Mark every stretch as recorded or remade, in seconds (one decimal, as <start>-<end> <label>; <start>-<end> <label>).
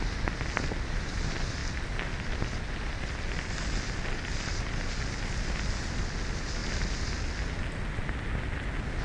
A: 0.0-9.0 recorded